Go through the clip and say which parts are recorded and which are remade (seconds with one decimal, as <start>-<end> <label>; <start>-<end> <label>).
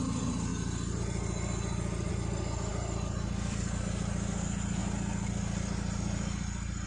0.0-2.7 recorded; 2.7-3.8 remade; 3.8-6.9 recorded